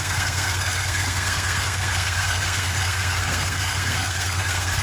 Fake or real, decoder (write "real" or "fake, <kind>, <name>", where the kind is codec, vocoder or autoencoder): fake, codec, SNAC